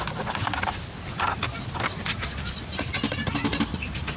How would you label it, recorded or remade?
recorded